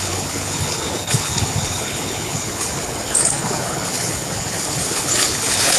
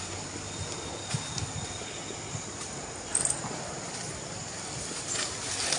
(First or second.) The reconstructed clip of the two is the first